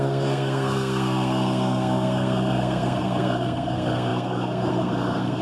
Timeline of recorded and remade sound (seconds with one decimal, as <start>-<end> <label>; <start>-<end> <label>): 0.0-5.4 remade